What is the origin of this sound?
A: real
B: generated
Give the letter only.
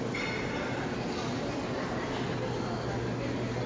A